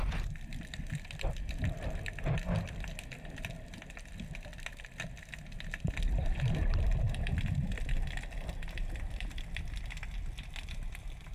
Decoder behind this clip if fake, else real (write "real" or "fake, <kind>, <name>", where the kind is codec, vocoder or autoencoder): real